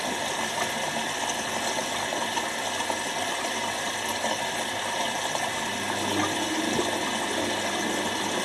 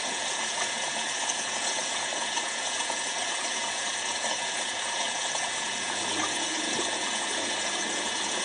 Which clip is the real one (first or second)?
first